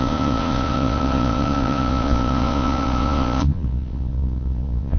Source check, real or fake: fake